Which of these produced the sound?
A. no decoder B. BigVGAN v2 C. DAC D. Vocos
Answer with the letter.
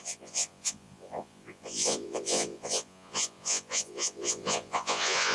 D